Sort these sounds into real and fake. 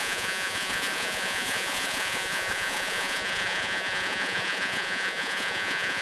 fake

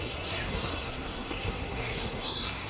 fake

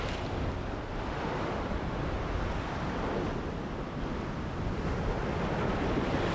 real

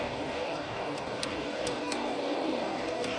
fake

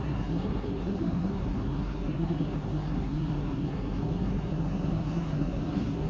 fake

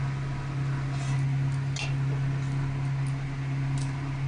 real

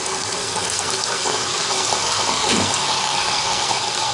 fake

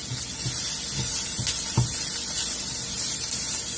real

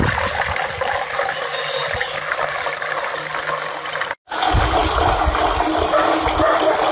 real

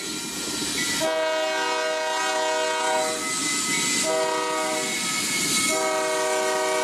real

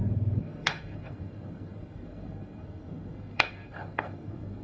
fake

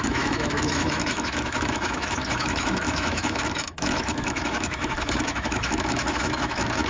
fake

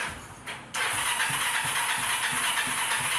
real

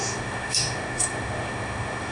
fake